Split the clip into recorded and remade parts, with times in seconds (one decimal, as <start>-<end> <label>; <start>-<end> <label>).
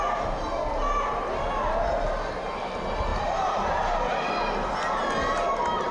0.0-5.9 recorded